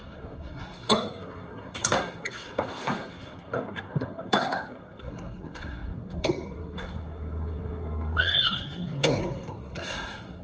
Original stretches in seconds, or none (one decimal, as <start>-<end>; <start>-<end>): none

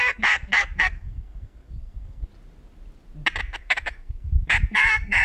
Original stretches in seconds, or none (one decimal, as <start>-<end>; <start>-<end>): 2.3-3.4